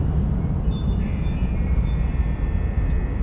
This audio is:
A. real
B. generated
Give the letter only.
B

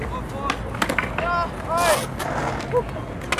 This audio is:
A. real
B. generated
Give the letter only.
A